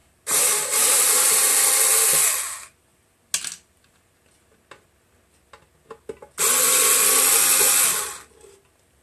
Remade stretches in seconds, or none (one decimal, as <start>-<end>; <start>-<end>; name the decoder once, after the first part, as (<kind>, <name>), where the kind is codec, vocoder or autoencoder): 0.0-1.5 (vocoder, BigVGAN v2)

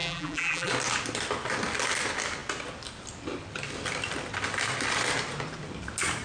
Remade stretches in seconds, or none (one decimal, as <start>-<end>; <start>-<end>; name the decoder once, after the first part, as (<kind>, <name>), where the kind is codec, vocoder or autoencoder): 0.0-0.7 (vocoder, BigVGAN v2)

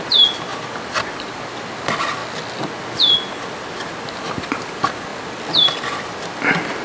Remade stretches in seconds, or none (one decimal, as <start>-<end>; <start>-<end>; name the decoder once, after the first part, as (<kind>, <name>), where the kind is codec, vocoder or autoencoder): none

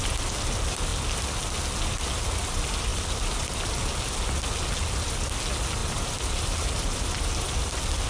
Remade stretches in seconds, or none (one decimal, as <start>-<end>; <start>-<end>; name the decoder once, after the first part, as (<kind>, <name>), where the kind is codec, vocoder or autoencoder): 2.9-3.8 (vocoder, BigVGAN v2); 5.8-7.2

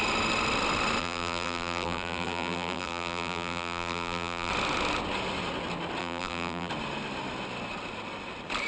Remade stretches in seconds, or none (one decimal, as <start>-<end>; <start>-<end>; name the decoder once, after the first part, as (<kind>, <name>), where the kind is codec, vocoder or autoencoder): 1.0-4.5 (vocoder, BigVGAN v2); 6.0-6.7